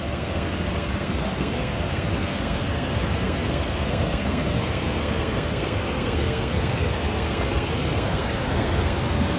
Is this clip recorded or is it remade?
remade